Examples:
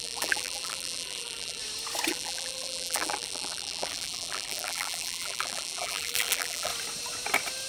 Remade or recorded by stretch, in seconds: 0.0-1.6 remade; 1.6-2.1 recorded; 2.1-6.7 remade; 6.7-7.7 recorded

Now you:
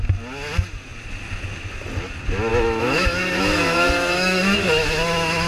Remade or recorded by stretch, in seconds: 0.0-2.5 recorded; 2.5-5.5 remade

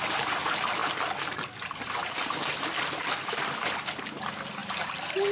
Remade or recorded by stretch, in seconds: 0.0-0.8 recorded; 0.8-4.0 remade; 4.0-4.6 recorded; 4.6-5.3 remade